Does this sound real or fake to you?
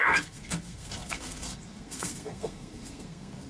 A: fake